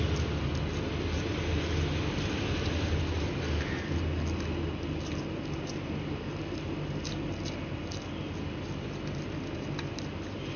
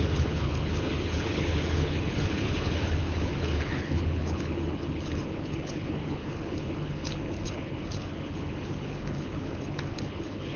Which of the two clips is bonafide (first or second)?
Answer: first